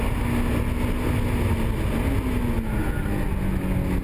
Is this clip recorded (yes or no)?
yes